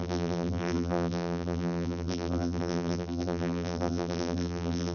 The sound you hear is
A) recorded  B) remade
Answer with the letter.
B